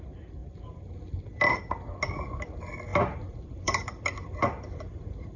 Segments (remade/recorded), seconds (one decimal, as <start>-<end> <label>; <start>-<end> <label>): 0.0-0.4 recorded; 0.4-1.6 remade; 1.6-2.9 recorded; 2.9-4.8 remade; 4.8-5.4 recorded